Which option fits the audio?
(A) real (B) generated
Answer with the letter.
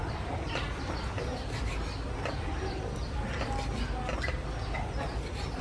A